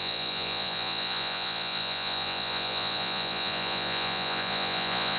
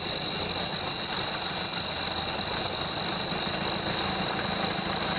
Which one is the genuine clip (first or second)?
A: second